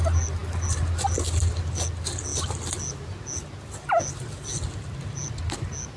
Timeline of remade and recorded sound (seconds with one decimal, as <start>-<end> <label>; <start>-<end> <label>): 0.0-6.0 recorded

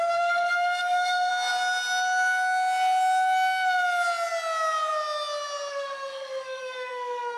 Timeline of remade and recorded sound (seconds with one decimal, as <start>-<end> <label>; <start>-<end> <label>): 0.0-1.3 remade; 1.3-5.7 recorded; 5.7-7.4 remade

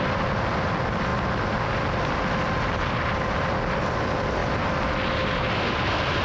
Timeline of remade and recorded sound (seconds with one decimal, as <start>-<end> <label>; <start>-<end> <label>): 0.0-6.2 recorded

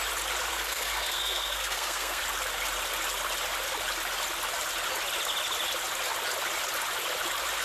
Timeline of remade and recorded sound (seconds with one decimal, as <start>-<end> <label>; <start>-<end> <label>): 0.0-0.5 recorded; 0.5-2.2 remade; 2.2-7.6 recorded

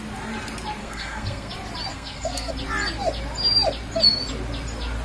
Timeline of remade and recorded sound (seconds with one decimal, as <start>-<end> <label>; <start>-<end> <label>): 0.0-0.8 recorded; 0.8-1.5 remade; 1.5-1.9 recorded; 1.9-2.5 remade; 2.5-5.0 recorded

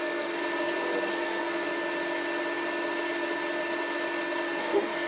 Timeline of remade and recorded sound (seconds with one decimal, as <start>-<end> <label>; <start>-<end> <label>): 0.0-0.4 remade; 0.4-1.1 recorded; 1.1-1.7 remade; 1.7-4.6 recorded; 4.6-5.1 remade

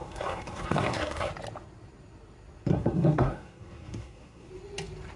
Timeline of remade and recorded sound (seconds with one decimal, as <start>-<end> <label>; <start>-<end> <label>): 0.0-1.3 remade; 1.3-2.7 recorded; 2.7-4.5 remade; 4.5-5.2 recorded

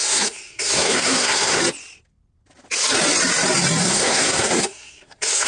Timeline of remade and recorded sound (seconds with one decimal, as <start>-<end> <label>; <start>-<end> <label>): 0.0-1.6 remade; 1.6-3.8 recorded; 3.8-5.5 remade